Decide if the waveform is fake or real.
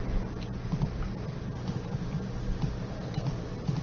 real